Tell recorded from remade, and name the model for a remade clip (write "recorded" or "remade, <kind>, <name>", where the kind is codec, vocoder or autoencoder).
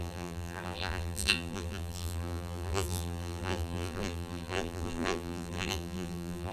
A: remade, vocoder, BigVGAN v2